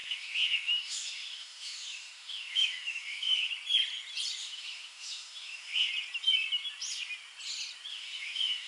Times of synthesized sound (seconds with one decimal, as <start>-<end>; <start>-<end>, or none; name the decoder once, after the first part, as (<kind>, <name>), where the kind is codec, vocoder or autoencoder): 0.0-3.5 (autoencoder, DAC-VAE); 4.4-5.9; 7.9-8.7